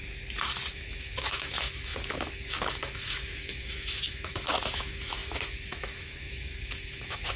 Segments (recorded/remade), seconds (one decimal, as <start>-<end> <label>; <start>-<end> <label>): 0.0-0.7 recorded; 0.7-7.4 remade